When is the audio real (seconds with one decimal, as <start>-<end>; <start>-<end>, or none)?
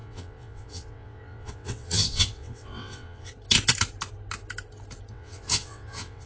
3.3-5.1